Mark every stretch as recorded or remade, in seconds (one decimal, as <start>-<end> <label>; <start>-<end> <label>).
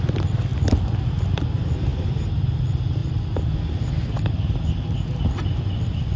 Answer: 0.0-6.2 recorded